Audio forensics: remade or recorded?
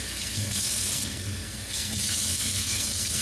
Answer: remade